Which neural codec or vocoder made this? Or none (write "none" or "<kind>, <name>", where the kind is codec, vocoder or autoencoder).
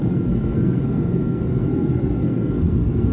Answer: codec, SNAC